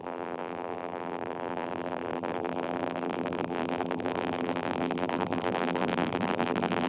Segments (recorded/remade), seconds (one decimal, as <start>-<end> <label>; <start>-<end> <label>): 0.0-6.9 remade